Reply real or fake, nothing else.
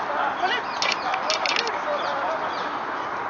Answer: real